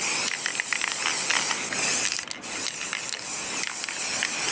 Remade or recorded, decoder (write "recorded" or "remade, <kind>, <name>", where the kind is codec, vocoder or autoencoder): recorded